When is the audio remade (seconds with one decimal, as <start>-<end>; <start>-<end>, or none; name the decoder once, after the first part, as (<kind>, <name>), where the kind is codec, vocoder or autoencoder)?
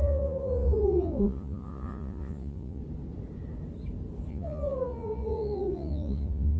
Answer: 0.0-2.8 (vocoder, Vocos); 4.3-6.6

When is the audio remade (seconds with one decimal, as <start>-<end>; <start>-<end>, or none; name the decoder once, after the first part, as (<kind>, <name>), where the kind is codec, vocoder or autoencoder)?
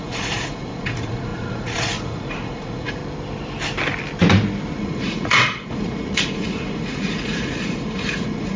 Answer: 0.0-3.0 (vocoder, Vocos); 4.8-8.6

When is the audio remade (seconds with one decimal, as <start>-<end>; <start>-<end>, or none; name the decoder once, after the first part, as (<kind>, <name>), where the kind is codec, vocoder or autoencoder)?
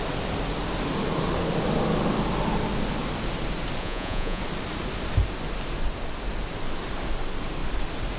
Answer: 3.8-4.4 (vocoder, Vocos)